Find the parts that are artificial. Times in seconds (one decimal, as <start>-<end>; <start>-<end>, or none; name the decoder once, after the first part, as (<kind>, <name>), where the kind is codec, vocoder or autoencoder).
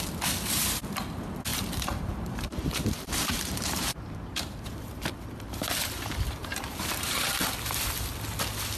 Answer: 1.5-5.1 (vocoder, BigVGAN v2); 6.4-7.4